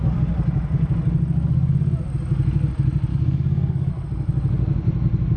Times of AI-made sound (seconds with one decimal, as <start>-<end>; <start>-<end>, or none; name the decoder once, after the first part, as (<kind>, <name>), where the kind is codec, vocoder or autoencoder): 3.1-3.9 (codec, DAC)

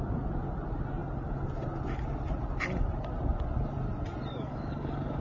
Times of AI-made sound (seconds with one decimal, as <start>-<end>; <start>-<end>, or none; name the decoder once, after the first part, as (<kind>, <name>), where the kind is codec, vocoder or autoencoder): 4.3-5.2 (codec, DAC)

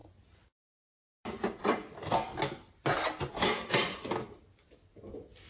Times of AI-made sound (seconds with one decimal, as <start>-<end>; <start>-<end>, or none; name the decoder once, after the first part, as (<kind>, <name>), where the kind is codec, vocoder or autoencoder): none

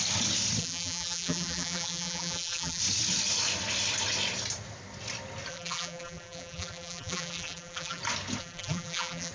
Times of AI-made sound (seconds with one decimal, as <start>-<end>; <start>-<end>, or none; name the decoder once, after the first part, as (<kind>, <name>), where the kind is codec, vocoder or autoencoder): 0.6-2.8 (vocoder, BigVGAN v2); 5.5-8.0; 8.4-9.3

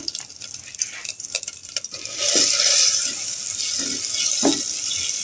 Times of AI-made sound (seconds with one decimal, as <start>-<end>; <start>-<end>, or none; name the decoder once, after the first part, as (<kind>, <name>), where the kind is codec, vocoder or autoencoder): none

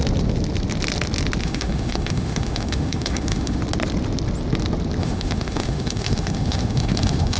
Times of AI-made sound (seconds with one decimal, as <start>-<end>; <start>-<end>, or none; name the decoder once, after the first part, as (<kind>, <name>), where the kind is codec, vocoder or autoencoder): 1.4-3.6 (autoencoder, DAC-VAE); 5.0-7.4

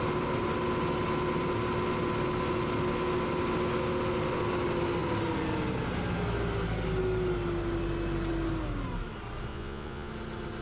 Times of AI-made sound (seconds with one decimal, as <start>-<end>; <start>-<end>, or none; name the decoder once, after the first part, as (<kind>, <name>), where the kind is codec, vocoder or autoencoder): 9.5-10.1 (vocoder, Vocos)